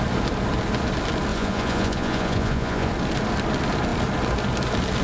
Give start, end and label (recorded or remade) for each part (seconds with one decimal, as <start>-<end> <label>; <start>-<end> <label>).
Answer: 0.0-1.3 recorded; 1.3-2.9 remade; 2.9-5.0 recorded